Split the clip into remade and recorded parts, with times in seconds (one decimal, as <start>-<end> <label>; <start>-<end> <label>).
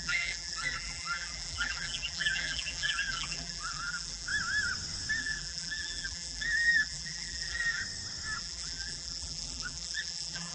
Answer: 0.0-4.3 remade; 4.3-5.2 recorded; 5.2-7.8 remade; 7.8-8.4 recorded; 8.4-10.5 remade